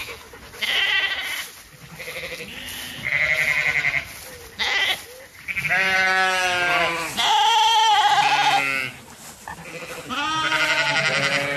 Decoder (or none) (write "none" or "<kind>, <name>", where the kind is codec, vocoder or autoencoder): none